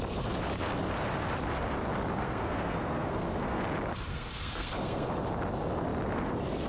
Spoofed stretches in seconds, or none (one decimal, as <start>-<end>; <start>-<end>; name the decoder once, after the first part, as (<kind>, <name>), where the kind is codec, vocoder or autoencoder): 2.2-3.6 (codec, SNAC); 4.1-5.1